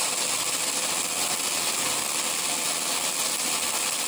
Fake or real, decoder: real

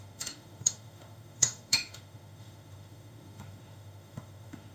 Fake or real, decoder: fake, autoencoder, DAC-VAE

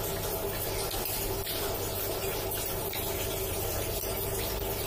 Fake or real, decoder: real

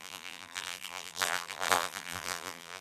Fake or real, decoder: fake, vocoder, BigVGAN v2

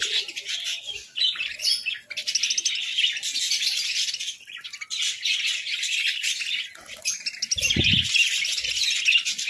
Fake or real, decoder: real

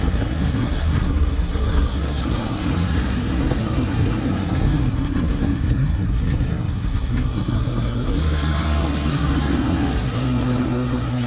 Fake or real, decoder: fake, codec, SNAC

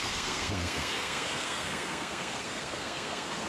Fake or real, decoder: fake, codec, SNAC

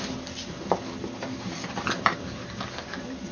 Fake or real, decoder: real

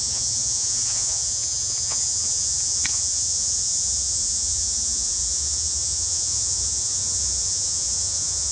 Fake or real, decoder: fake, vocoder, Vocos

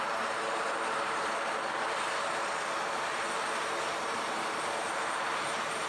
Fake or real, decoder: fake, vocoder, BigVGAN v2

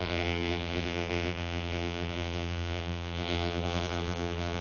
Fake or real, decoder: fake, vocoder, BigVGAN v2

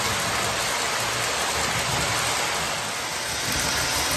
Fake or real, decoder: real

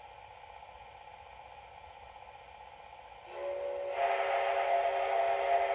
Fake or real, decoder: real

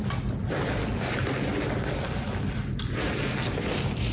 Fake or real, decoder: real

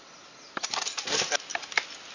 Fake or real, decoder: real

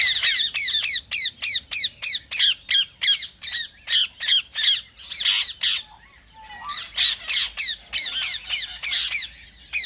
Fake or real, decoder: real